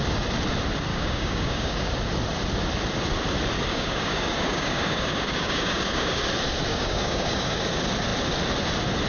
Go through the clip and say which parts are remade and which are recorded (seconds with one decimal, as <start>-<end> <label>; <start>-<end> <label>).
0.0-0.9 recorded; 0.9-1.9 remade; 1.9-3.7 recorded; 3.7-6.2 remade; 6.2-6.7 recorded; 6.7-7.6 remade; 7.6-9.1 recorded